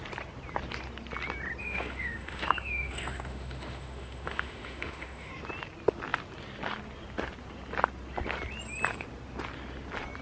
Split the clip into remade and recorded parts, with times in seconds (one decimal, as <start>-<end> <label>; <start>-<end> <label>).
0.0-1.6 recorded; 1.6-5.3 remade; 5.3-10.2 recorded